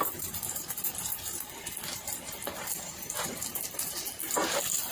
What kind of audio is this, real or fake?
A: real